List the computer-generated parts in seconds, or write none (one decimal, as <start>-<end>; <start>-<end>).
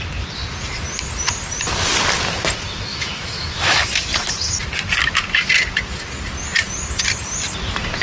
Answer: 2.9-3.9